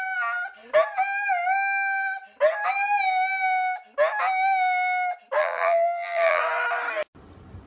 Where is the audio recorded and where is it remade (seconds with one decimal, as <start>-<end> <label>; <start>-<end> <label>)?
0.0-5.4 recorded; 5.4-6.4 remade; 6.4-7.7 recorded